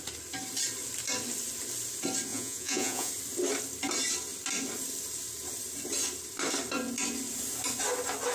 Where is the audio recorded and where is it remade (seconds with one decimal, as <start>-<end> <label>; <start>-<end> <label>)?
0.0-2.3 recorded; 2.3-3.1 remade; 3.1-8.3 recorded